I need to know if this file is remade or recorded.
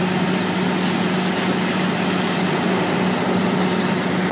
recorded